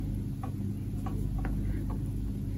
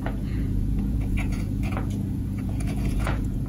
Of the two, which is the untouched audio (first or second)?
first